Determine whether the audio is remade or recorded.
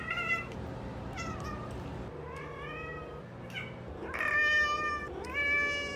recorded